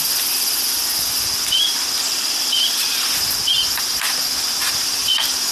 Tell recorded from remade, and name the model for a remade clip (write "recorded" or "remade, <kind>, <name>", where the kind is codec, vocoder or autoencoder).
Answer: recorded